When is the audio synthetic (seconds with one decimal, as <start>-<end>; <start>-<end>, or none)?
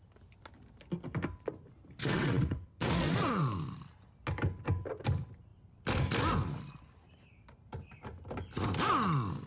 2.0-3.4